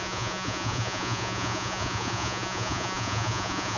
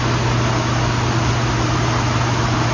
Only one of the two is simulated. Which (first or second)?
first